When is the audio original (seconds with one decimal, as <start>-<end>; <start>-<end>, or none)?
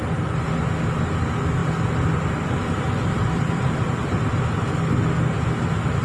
0.0-1.6; 4.5-6.0